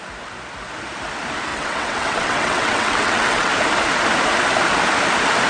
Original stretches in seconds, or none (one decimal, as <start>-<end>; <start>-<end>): 0.0-1.5; 3.5-5.5